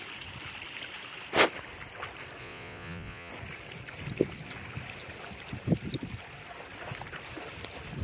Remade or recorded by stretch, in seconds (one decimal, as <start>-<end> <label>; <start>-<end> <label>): 0.0-2.4 recorded; 2.4-3.3 remade; 3.3-8.0 recorded